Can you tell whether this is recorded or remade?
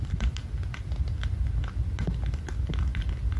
recorded